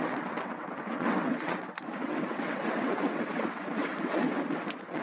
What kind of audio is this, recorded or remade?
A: remade